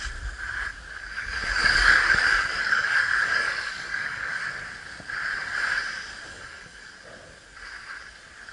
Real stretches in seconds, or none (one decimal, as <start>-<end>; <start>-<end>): 0.0-1.0; 4.4-6.3; 6.9-8.5